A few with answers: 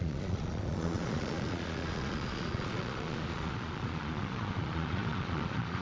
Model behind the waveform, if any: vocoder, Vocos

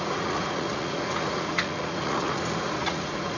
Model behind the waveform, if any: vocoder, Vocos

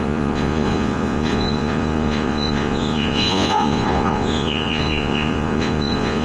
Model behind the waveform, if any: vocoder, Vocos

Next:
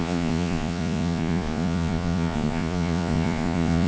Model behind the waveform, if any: vocoder, Vocos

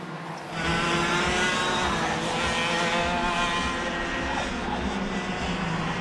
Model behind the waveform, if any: none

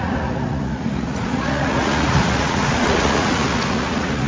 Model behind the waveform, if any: vocoder, Vocos